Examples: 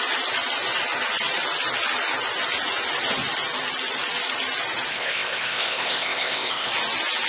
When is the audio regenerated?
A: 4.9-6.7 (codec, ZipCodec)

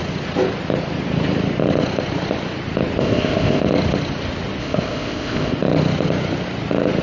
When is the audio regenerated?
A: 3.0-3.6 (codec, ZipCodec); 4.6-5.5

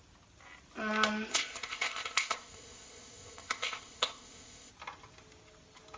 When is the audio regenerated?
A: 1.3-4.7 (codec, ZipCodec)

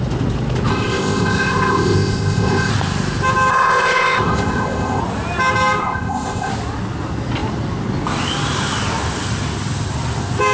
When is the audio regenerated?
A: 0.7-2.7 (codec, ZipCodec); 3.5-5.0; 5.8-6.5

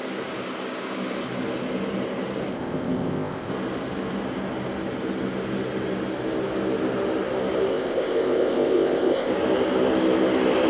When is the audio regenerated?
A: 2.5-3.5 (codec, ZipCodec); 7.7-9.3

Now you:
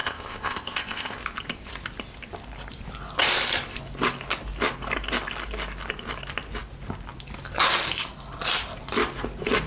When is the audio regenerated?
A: 0.0-1.2 (codec, ZipCodec)

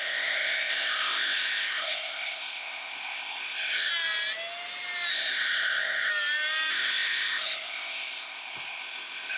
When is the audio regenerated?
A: 0.0-3.9 (codec, ZipCodec); 5.1-6.1; 6.7-9.4

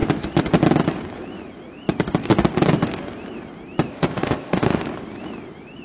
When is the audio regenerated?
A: 3.9-4.8 (codec, ZipCodec)